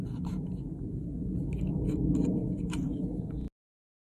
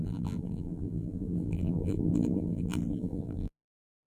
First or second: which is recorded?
first